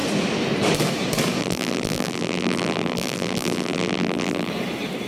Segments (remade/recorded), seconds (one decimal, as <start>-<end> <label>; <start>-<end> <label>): 0.0-1.4 recorded; 1.4-4.5 remade; 4.5-5.1 recorded